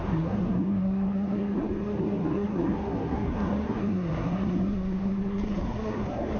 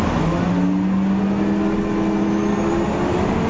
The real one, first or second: second